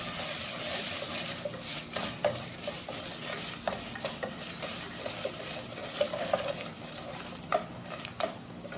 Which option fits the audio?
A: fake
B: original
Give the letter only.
B